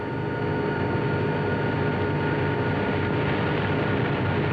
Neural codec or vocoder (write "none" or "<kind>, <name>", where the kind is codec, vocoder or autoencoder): none